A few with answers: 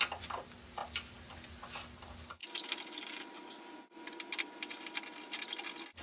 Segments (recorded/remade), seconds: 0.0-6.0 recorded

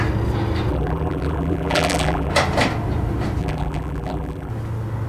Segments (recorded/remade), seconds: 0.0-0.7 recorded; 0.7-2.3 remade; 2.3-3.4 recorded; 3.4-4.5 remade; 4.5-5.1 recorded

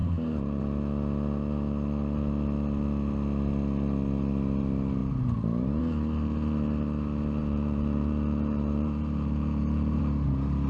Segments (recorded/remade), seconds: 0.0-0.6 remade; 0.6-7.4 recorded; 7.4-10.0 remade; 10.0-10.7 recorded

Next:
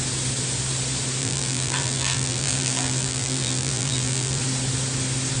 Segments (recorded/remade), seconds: 0.0-1.2 recorded; 1.2-4.4 remade; 4.4-5.4 recorded

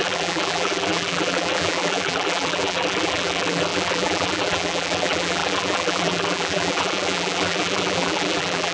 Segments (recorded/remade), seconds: 0.0-8.7 remade